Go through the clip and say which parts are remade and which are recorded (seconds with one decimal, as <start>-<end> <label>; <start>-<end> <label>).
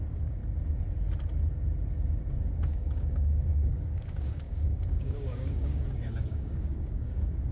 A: 0.0-0.4 remade; 0.4-2.7 recorded; 2.7-7.5 remade